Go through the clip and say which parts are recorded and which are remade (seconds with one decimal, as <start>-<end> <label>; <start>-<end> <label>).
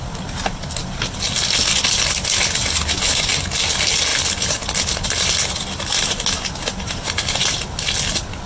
0.0-8.5 recorded